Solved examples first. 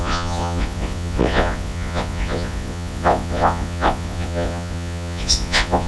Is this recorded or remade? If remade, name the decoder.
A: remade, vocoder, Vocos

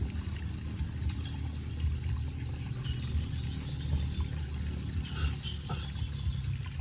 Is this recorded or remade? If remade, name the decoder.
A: recorded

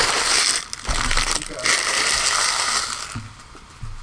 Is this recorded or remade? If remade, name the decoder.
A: recorded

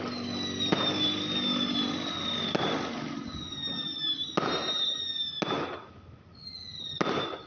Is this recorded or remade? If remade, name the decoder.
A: recorded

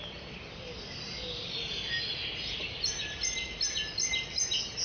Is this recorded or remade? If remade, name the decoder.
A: recorded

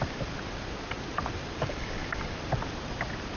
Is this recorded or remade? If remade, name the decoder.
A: recorded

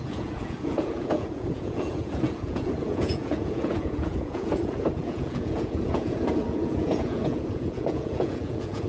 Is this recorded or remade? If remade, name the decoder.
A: remade, vocoder, Vocos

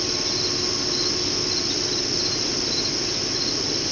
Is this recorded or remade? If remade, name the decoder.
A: recorded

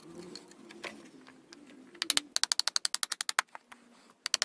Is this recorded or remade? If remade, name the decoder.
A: recorded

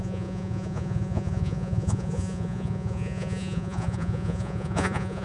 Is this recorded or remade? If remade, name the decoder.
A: remade, vocoder, Vocos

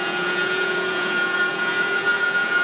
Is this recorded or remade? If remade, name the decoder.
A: remade, vocoder, Vocos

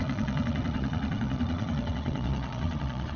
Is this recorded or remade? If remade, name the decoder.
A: remade, vocoder, Vocos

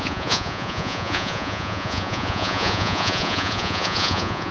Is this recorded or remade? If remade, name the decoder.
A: remade, vocoder, Vocos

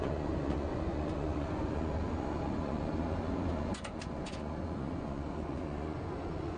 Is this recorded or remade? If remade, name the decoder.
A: remade, vocoder, Vocos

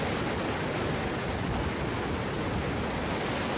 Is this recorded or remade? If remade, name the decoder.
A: recorded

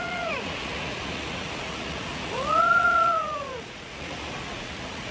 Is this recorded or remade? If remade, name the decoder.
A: remade, vocoder, Vocos